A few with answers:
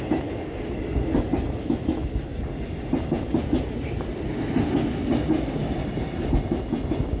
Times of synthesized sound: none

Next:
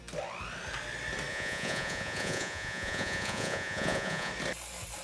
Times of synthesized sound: 1.3-4.3

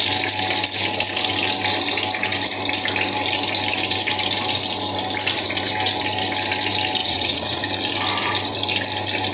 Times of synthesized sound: 7.0-7.6

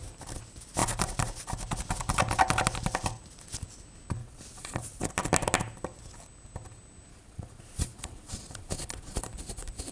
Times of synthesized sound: 4.2-5.1; 7.1-9.2

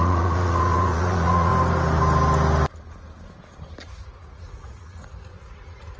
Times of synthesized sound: 0.0-1.5; 3.9-6.0